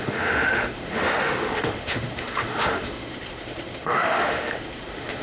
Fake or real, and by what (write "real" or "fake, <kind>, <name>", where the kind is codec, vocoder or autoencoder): fake, autoencoder, DAC-VAE